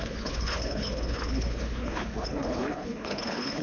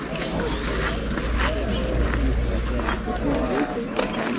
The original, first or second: second